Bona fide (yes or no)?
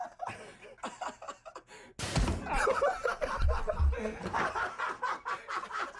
yes